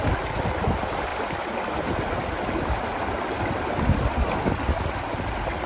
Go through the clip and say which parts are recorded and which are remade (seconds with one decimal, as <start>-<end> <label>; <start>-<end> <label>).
0.0-5.7 recorded